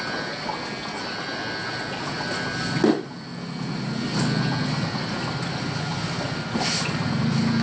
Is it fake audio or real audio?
real